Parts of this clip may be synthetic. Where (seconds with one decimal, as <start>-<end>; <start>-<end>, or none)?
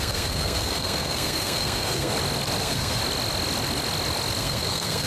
0.0-2.1; 2.6-3.0; 4.4-5.1